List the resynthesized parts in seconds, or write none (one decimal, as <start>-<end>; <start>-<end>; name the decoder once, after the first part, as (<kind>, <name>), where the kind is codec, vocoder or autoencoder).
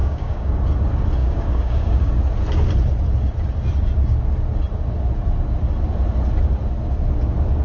0.0-0.5 (codec, DAC); 1.2-2.1